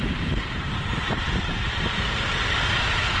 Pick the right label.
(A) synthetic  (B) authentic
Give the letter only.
A